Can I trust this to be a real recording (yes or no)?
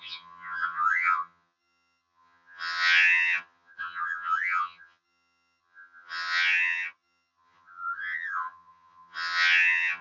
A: no